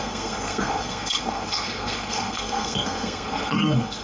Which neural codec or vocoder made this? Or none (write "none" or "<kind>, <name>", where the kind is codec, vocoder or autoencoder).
codec, SNAC